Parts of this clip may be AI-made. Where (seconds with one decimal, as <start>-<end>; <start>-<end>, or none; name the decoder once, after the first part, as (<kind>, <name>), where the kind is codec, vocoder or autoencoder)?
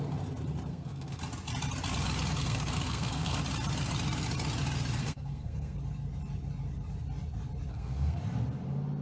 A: 0.7-1.2 (codec, SNAC); 2.4-3.4; 5.0-5.8; 7.7-8.2